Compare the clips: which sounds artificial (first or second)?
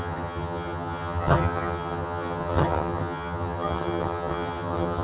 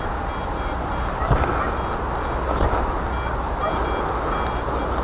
first